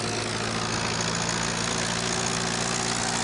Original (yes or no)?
yes